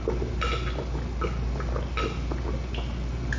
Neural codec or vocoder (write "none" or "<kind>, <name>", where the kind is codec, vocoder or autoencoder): none